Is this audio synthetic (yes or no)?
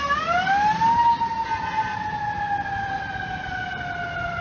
no